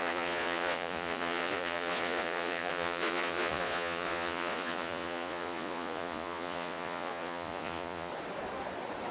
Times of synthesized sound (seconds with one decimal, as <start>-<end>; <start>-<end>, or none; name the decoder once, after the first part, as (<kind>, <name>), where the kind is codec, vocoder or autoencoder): 0.0-8.1 (vocoder, Vocos)